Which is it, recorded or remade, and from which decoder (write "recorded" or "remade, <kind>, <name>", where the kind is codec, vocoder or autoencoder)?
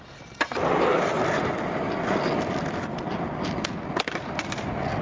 recorded